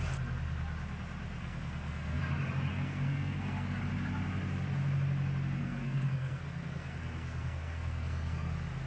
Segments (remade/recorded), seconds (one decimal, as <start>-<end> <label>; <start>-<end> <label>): 0.0-1.4 recorded; 1.4-2.2 remade; 2.2-2.7 recorded; 2.7-3.8 remade; 3.8-5.6 recorded; 5.6-8.5 remade; 8.5-8.9 recorded